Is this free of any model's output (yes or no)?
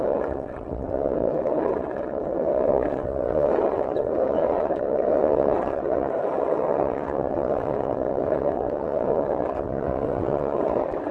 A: no